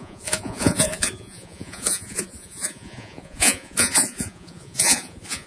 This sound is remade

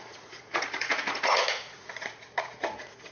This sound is remade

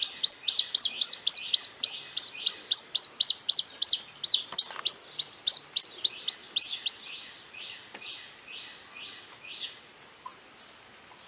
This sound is recorded